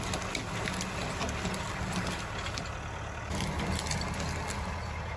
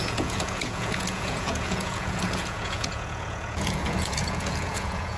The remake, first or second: second